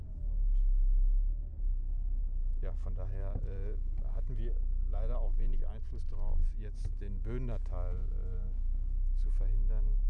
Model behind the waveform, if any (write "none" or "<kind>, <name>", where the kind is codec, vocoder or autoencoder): none